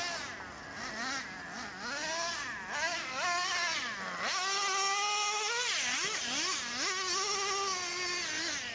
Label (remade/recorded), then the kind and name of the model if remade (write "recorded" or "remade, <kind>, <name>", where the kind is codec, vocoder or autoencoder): recorded